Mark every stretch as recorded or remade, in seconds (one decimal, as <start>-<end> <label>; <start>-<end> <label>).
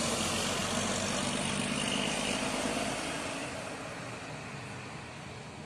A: 0.0-5.7 recorded